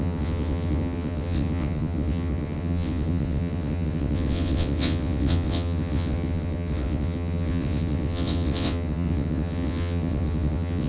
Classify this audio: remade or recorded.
remade